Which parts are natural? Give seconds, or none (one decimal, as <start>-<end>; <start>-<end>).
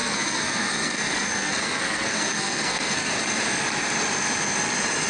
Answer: 3.1-5.1